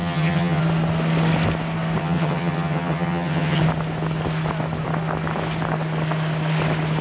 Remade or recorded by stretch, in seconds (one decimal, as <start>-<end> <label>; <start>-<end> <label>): 0.0-0.6 remade; 0.6-2.0 recorded; 2.0-3.6 remade; 3.6-7.0 recorded